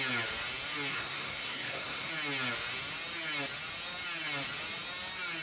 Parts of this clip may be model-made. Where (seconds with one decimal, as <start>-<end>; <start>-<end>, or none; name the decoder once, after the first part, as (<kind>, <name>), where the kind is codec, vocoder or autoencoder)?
0.9-2.1 (codec, SNAC)